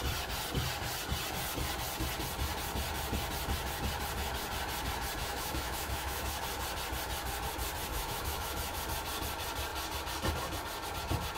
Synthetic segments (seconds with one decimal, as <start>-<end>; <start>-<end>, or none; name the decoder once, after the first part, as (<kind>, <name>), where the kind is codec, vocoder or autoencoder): 5.2-6.4 (autoencoder, DAC-VAE); 7.9-8.8